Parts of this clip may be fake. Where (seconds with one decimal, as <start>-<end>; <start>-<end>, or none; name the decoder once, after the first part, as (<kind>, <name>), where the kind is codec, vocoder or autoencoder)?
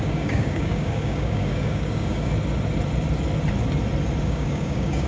0.0-2.3 (codec, DAC); 4.2-5.1